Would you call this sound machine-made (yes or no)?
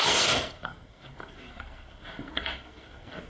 yes